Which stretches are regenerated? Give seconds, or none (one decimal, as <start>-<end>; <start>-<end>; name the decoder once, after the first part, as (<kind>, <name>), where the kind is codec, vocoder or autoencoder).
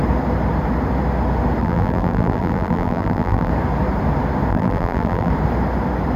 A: 1.6-3.5 (vocoder, BigVGAN v2); 4.5-5.3